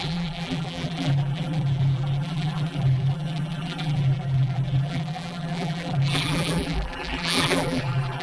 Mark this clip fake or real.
fake